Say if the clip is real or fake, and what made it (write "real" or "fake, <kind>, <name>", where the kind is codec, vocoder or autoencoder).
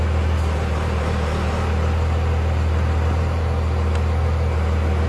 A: real